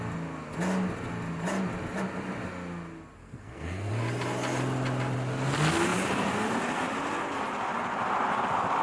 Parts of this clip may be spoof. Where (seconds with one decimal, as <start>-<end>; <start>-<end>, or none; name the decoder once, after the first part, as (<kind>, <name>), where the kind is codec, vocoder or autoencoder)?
3.2-3.9 (codec, SNAC)